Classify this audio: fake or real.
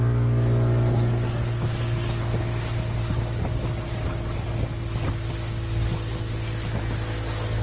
real